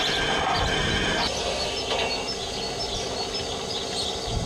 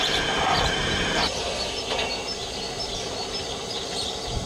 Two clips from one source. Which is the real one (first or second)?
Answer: first